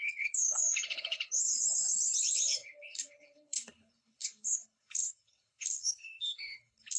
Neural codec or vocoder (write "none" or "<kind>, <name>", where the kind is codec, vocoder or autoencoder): codec, HILCodec